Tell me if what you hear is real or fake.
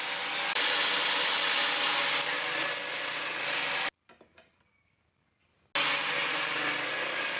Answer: real